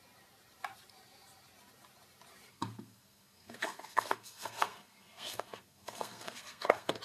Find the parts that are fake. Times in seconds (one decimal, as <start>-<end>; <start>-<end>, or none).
2.5-7.0